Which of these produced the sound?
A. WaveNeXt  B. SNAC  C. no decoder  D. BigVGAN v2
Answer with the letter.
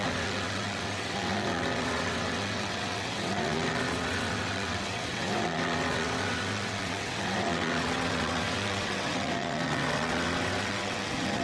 A